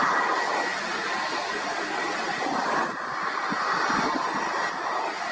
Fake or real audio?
real